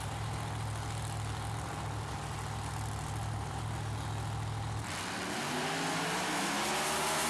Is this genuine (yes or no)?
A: yes